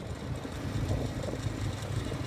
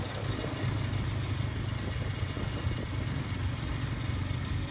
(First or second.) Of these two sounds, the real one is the second